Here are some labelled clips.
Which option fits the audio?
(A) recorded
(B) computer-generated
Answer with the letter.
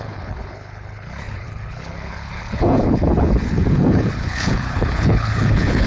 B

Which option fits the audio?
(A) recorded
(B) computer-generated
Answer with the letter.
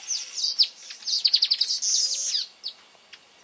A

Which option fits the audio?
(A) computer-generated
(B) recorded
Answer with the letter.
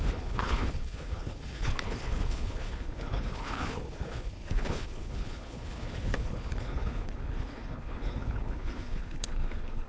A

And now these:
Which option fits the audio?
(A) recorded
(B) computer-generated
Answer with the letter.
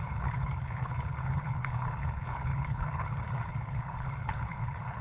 B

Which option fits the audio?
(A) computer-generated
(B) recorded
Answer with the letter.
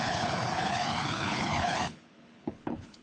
A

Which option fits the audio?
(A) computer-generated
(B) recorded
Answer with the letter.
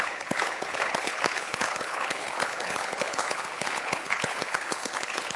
A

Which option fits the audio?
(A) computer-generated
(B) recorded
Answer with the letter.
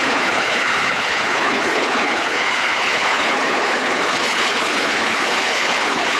A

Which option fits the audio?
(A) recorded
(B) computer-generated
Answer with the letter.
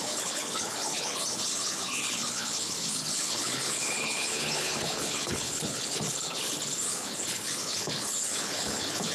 B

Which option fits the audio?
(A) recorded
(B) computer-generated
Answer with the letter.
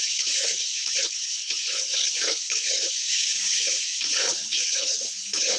B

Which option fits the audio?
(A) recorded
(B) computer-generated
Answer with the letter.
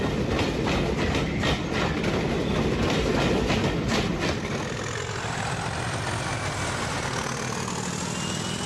A